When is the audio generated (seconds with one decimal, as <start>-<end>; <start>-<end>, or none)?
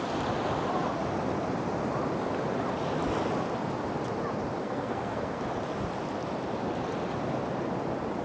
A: 4.6-5.4